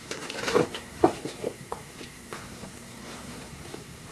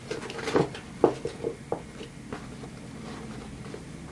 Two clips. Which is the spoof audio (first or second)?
first